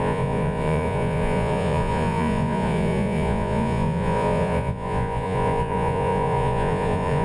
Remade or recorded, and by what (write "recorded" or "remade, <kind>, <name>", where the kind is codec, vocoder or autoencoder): remade, vocoder, Vocos